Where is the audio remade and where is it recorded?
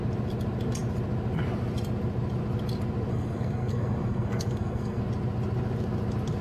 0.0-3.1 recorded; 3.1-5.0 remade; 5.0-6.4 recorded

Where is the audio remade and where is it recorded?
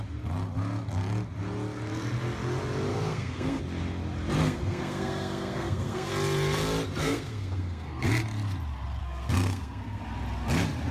0.0-2.9 recorded; 2.9-3.6 remade; 3.6-4.4 recorded; 4.4-6.1 remade; 6.1-7.0 recorded; 7.0-8.1 remade; 8.1-9.0 recorded; 9.0-10.0 remade; 10.0-10.9 recorded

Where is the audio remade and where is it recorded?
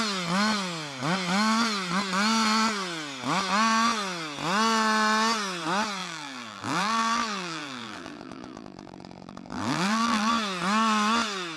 0.0-6.0 recorded; 6.0-10.3 remade; 10.3-11.6 recorded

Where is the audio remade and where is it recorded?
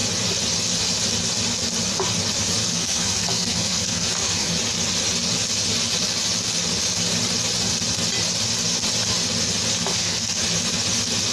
0.0-2.6 recorded; 2.6-4.5 remade; 4.5-9.9 recorded; 9.9-10.4 remade; 10.4-11.3 recorded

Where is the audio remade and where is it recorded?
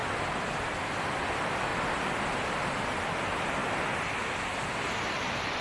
0.0-1.7 remade; 1.7-2.7 recorded; 2.7-5.6 remade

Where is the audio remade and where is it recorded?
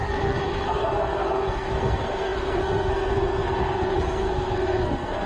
0.0-5.3 remade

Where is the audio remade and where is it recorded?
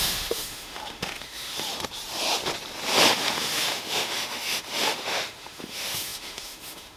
0.0-1.7 remade; 1.7-3.1 recorded; 3.1-7.0 remade